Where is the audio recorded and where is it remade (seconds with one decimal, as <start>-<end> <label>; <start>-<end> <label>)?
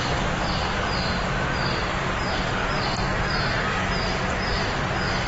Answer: 0.0-2.6 recorded; 2.6-3.2 remade; 3.2-5.3 recorded